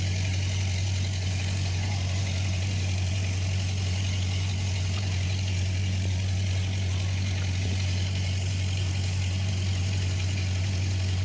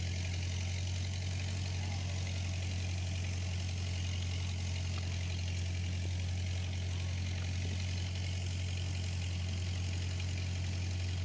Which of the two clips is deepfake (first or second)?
first